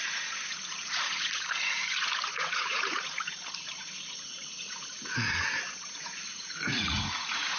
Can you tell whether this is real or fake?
fake